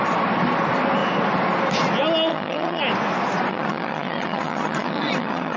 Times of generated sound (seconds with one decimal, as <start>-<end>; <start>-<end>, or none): 2.3-2.8; 3.5-5.6